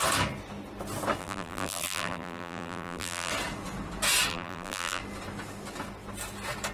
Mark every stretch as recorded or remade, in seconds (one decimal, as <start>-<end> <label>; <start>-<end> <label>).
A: 0.0-1.2 recorded; 1.2-3.3 remade; 3.3-4.3 recorded; 4.3-5.0 remade; 5.0-6.7 recorded